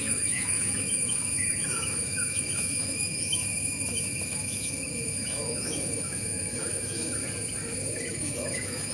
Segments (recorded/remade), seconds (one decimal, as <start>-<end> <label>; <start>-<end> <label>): 0.0-7.2 remade; 7.2-8.1 recorded; 8.1-8.9 remade